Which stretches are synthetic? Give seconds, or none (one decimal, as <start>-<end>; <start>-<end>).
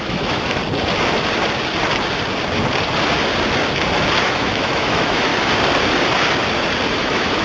0.0-0.6; 4.2-5.3; 6.9-7.4